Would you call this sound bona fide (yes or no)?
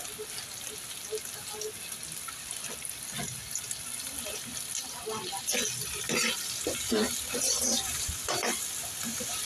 yes